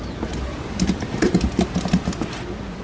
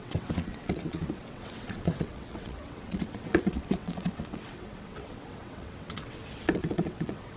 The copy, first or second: second